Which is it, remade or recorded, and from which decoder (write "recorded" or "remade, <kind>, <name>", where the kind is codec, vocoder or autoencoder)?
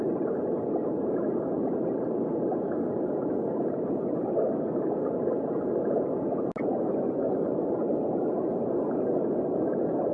recorded